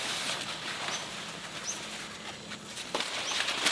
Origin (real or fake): real